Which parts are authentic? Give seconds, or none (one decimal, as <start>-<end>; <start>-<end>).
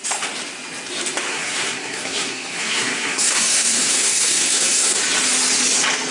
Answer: 0.0-1.3; 5.0-6.1